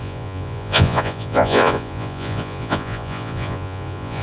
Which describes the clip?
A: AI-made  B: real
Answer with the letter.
A